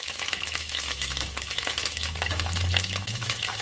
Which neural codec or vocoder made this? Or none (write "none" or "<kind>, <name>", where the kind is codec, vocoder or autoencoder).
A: autoencoder, DAC-VAE